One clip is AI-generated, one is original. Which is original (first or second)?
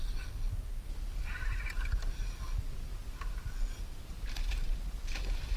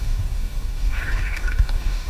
first